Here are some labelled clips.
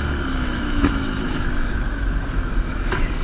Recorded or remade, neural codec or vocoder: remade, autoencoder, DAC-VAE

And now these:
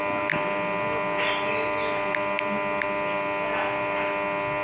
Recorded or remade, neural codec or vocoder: recorded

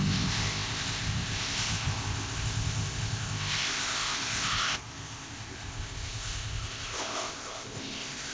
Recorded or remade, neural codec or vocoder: remade, codec, ZipCodec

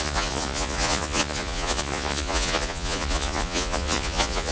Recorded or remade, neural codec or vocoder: remade, vocoder, Vocos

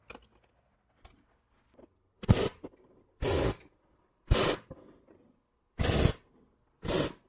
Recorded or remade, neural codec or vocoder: recorded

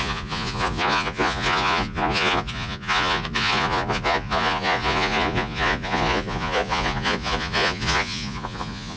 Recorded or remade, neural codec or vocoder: remade, vocoder, Vocos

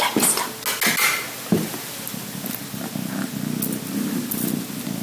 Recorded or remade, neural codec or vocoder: recorded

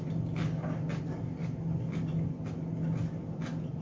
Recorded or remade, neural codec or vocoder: recorded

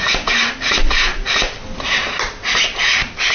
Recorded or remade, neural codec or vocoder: recorded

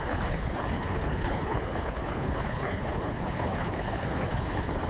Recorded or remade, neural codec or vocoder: remade, codec, HILCodec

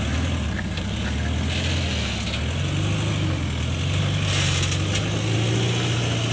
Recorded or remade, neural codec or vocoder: recorded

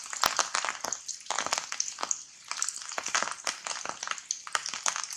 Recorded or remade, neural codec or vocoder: recorded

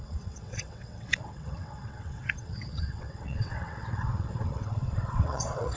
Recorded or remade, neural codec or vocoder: remade, vocoder, WaveNeXt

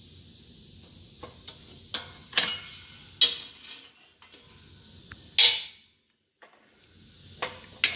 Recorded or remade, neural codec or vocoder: recorded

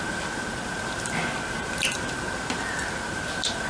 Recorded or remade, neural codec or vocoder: recorded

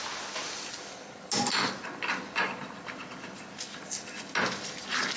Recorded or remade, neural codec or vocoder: recorded